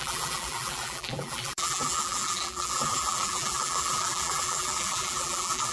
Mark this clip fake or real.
fake